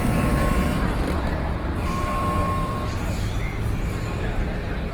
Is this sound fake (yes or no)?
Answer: yes